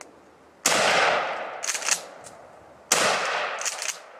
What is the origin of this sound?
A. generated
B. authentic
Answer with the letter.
B